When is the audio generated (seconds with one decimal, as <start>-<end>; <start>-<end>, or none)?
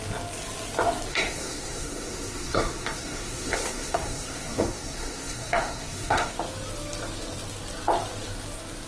1.1-6.3